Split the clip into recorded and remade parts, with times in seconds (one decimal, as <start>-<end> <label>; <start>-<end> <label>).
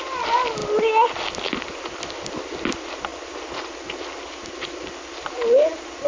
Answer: 0.0-6.1 recorded